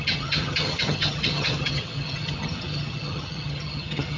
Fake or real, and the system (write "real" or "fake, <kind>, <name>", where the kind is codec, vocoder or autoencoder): fake, vocoder, HiFi-GAN